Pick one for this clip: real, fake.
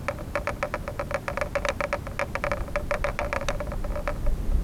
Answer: real